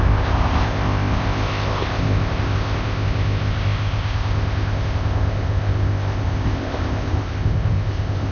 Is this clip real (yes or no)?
no